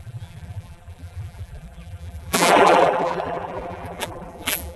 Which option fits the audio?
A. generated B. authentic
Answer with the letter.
A